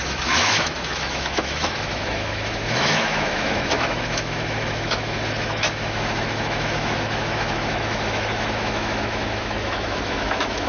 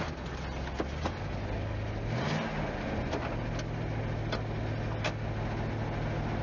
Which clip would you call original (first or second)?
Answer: second